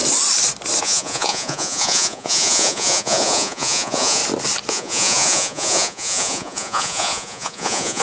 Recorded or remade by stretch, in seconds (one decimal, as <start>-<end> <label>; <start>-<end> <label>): 0.0-0.8 recorded; 0.8-4.2 remade; 4.2-4.7 recorded; 4.7-8.0 remade